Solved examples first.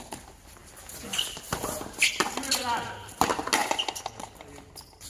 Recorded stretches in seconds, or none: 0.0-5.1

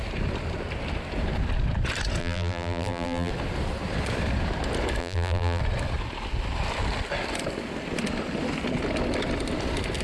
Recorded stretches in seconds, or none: 0.0-2.2; 3.3-5.0; 5.6-10.0

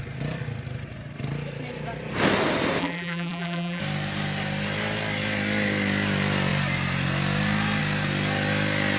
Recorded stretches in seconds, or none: 0.0-2.8; 3.8-9.0

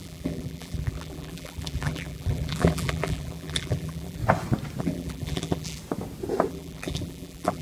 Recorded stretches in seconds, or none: 4.2-4.8; 5.8-6.5